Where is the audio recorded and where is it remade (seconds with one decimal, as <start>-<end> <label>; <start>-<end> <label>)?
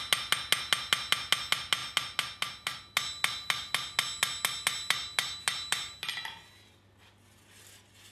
0.0-8.1 recorded